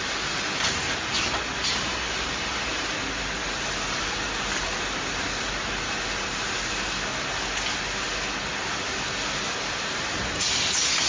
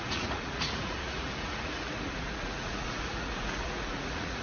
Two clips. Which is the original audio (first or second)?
first